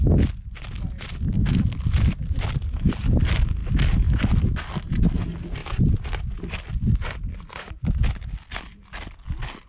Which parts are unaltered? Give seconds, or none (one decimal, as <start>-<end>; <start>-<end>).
0.0-9.7